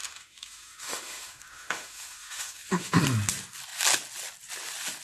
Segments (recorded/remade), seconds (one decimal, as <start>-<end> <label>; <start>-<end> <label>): 0.0-3.0 remade; 3.0-5.0 recorded